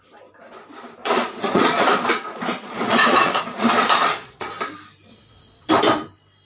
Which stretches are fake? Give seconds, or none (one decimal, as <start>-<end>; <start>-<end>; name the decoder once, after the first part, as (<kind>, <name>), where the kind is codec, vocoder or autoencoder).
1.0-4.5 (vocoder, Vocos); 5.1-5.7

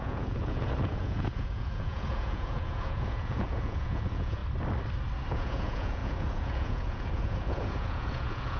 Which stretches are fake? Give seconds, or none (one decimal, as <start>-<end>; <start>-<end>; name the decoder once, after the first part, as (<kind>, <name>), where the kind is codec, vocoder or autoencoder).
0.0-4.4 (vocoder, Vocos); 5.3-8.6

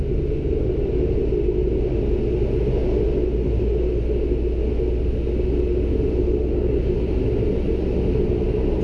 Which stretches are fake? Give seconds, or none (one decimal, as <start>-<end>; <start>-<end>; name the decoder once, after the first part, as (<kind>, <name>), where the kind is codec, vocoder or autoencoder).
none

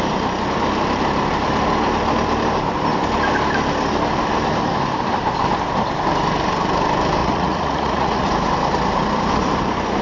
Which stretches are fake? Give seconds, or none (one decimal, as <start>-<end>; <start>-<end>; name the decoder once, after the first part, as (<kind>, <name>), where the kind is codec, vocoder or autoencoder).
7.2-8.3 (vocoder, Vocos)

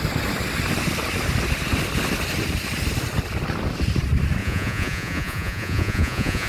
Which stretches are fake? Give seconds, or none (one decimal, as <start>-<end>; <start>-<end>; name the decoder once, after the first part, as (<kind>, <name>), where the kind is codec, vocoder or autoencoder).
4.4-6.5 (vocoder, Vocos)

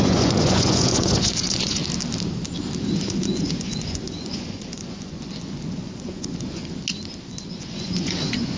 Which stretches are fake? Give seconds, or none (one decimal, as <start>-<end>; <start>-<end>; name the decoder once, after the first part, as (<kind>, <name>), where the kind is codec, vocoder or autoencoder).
0.0-1.8 (vocoder, Vocos); 2.8-6.6; 7.2-8.6